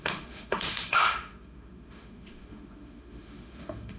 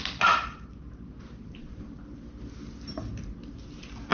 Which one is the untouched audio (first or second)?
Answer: second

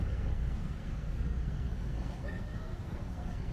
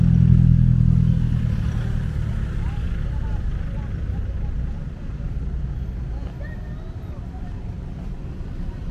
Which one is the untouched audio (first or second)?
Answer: second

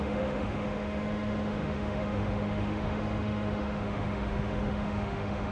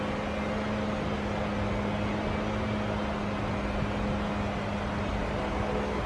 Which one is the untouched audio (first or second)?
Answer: second